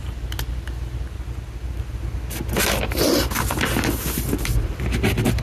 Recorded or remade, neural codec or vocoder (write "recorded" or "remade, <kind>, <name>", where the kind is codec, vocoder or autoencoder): recorded